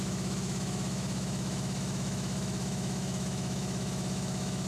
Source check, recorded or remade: remade